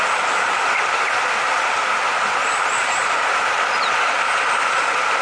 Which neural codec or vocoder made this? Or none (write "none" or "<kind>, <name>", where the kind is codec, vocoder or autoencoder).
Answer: none